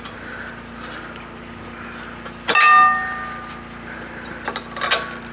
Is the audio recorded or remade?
recorded